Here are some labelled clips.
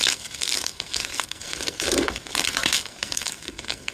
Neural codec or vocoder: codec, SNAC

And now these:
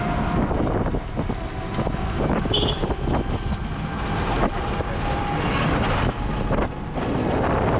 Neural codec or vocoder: none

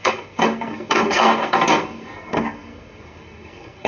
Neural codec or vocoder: codec, SNAC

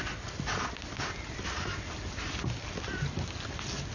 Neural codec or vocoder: none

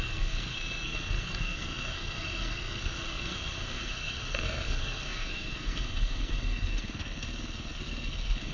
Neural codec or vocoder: codec, SNAC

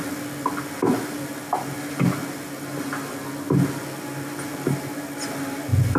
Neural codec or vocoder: none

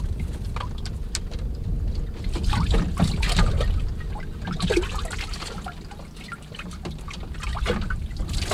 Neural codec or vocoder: none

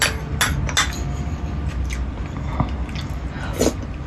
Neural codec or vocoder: none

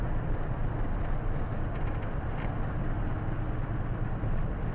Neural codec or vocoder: none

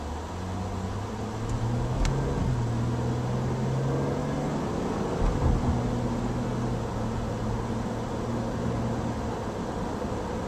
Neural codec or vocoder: none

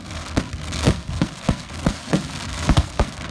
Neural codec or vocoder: codec, SNAC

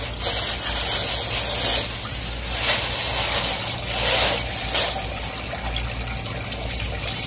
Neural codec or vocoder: none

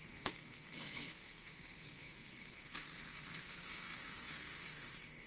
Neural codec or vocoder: codec, SNAC